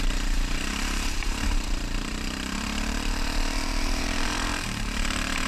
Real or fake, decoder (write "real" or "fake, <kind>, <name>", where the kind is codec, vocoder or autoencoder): fake, vocoder, BigVGAN v2